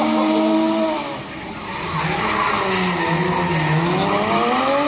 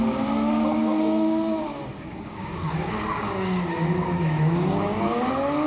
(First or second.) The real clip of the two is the first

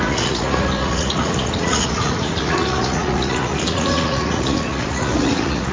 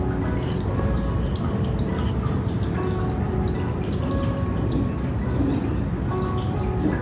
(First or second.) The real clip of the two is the second